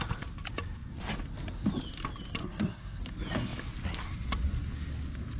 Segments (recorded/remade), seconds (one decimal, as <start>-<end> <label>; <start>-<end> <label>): 0.0-2.4 recorded; 2.4-3.0 remade; 3.0-5.4 recorded